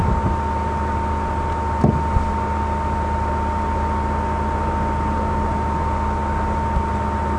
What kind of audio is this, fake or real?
real